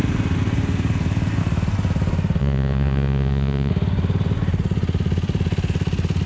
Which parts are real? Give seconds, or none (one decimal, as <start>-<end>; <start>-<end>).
0.0-2.4; 3.7-6.3